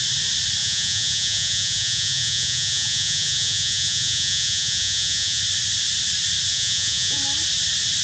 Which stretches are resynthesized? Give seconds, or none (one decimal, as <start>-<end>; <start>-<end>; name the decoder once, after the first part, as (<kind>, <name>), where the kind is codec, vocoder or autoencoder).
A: 0.6-5.4 (vocoder, Vocos); 6.5-7.2

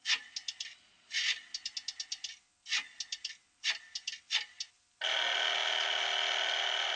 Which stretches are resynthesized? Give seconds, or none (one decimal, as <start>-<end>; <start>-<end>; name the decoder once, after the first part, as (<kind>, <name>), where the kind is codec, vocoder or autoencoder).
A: 0.7-1.2 (vocoder, Vocos)

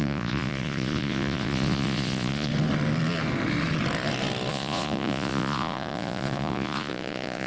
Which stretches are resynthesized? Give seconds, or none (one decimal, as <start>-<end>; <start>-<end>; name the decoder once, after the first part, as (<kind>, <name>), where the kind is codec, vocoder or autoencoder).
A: 0.0-2.5 (vocoder, Vocos); 4.5-7.5

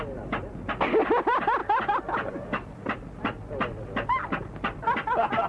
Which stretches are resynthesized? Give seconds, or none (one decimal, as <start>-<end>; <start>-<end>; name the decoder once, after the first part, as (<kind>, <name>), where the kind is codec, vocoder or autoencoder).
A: none

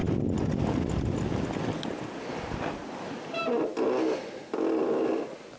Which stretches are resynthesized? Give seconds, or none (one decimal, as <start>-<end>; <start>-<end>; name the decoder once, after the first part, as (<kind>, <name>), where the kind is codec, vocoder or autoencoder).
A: none

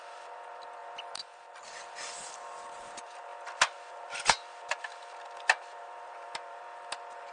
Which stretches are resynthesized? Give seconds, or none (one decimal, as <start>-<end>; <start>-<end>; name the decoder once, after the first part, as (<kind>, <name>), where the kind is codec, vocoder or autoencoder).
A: none

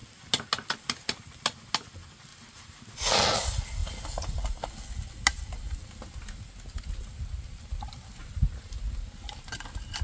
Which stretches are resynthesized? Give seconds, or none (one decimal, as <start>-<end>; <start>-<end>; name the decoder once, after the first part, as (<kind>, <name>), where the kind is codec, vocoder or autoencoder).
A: none

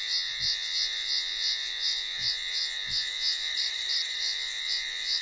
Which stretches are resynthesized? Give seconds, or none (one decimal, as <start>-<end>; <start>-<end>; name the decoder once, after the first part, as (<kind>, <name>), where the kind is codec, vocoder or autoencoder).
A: 0.0-3.5 (vocoder, Vocos); 4.2-5.2